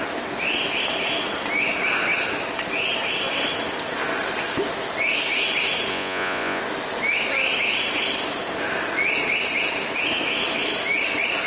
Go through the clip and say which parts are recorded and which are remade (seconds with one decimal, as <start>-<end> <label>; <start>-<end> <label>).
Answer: 0.0-5.9 recorded; 5.9-6.6 remade; 6.6-11.5 recorded